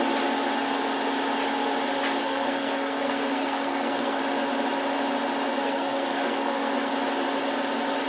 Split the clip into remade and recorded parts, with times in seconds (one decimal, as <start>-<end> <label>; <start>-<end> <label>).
0.0-2.2 recorded; 2.2-4.2 remade; 4.2-5.5 recorded; 5.5-6.9 remade; 6.9-8.1 recorded